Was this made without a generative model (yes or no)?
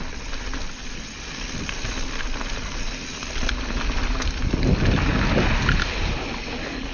yes